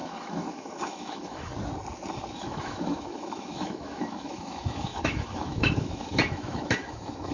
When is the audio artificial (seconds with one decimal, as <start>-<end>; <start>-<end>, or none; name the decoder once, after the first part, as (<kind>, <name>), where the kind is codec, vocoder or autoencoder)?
0.0-1.5 (autoencoder, DAC-VAE); 2.3-7.3